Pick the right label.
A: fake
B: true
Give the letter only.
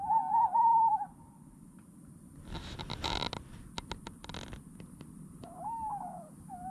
B